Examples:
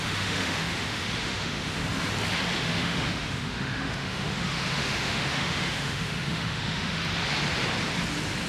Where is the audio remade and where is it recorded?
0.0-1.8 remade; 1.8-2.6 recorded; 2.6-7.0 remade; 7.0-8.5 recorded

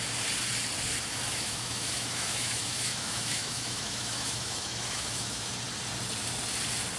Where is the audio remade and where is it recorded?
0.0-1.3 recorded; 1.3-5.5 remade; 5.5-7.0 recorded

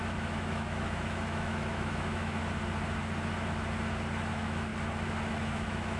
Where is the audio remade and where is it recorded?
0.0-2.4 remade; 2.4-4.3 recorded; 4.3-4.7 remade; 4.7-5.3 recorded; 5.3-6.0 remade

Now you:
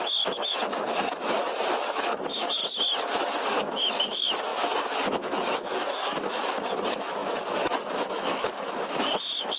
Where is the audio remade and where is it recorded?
0.0-2.6 remade; 2.6-3.4 recorded; 3.4-9.6 remade

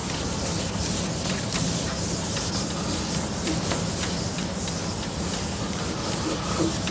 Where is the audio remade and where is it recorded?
0.0-6.9 recorded